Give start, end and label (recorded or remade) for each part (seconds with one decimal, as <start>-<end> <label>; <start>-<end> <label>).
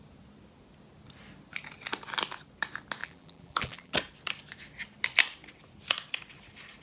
0.0-3.0 recorded; 3.0-3.9 remade; 3.9-6.8 recorded